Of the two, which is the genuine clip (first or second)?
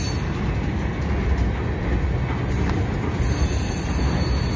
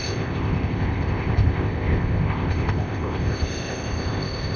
first